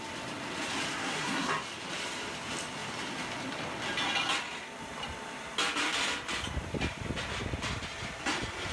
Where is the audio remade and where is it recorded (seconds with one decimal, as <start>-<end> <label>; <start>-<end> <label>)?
0.0-1.0 recorded; 1.0-1.5 remade; 1.5-8.7 recorded